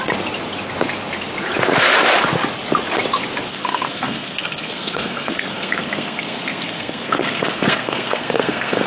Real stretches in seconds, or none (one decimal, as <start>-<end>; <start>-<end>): 0.0-3.5